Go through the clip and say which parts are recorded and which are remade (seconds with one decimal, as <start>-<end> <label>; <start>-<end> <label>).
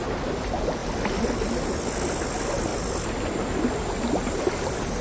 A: 0.0-5.0 recorded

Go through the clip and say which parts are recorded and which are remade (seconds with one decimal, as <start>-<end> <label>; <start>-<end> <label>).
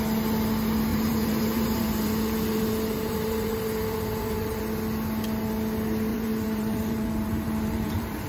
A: 0.0-0.9 recorded; 0.9-4.6 remade; 4.6-6.1 recorded; 6.1-8.3 remade